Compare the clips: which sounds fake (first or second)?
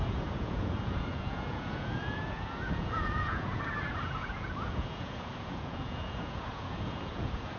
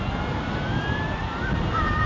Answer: first